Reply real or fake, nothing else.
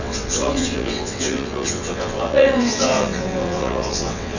fake